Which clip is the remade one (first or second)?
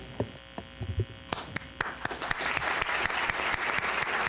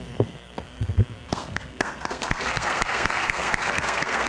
second